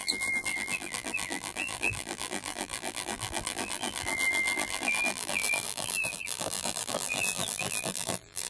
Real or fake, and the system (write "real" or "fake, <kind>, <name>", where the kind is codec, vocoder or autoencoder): fake, vocoder, BigVGAN v2